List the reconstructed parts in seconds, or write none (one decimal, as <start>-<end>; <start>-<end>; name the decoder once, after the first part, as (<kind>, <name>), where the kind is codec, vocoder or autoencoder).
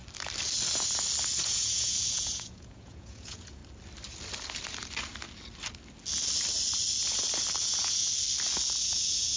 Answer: 1.4-3.6 (vocoder, Vocos); 7.6-8.1; 8.8-9.4